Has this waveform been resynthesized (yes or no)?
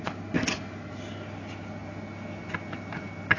no